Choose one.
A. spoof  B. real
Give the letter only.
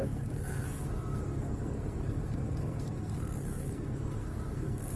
A